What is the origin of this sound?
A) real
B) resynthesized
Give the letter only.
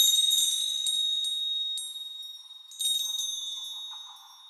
A